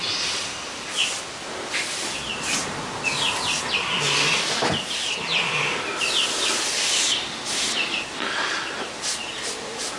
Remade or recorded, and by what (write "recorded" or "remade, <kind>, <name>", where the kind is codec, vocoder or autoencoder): recorded